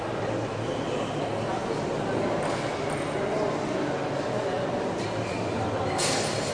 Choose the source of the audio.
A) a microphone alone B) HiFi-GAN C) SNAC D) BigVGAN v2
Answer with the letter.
A